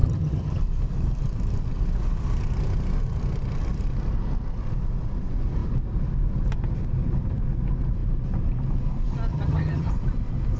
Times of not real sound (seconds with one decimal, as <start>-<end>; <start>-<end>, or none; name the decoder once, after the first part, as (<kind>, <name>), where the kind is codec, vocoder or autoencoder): 0.0-0.6 (vocoder, HiFi-GAN); 9.3-9.9